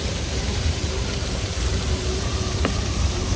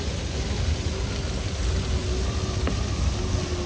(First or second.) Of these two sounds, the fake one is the first